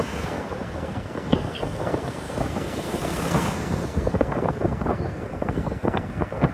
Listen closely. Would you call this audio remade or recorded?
remade